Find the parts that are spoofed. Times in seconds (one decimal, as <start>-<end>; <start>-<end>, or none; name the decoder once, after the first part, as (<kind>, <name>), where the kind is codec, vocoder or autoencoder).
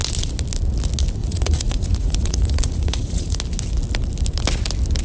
1.2-3.4 (vocoder, Vocos)